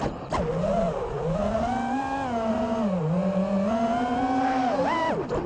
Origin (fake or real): real